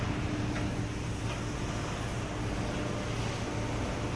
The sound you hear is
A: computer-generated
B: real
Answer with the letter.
B